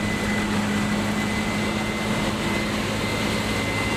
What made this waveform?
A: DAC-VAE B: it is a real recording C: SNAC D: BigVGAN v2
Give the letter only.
B